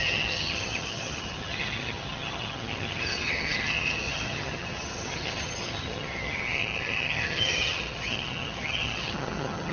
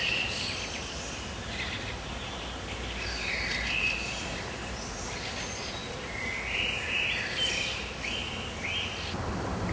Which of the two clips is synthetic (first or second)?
first